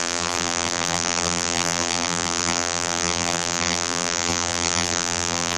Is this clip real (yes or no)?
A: no